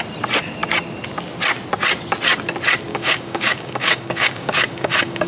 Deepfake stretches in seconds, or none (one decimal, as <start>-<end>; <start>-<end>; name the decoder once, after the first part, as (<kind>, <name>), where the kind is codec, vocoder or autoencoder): 2.9-5.3 (codec, DAC)